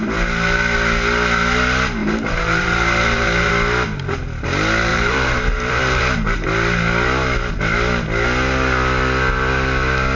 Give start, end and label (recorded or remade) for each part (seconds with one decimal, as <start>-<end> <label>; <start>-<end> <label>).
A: 0.0-2.0 recorded; 2.0-3.5 remade; 3.5-4.9 recorded; 4.9-6.0 remade; 6.0-10.1 recorded